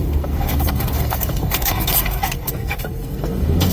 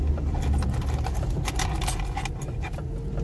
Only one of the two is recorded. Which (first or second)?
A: second